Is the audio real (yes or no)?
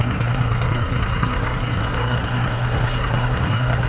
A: no